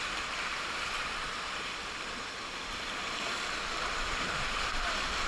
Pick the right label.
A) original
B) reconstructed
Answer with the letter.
B